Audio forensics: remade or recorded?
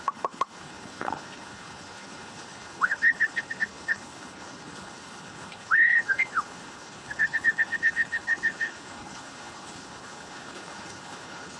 remade